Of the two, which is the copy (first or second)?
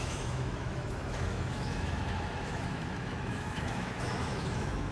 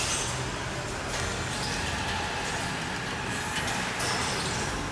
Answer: first